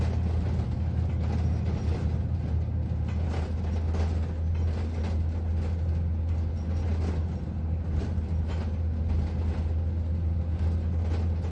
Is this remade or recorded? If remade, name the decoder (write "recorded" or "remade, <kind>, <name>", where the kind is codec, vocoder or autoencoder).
recorded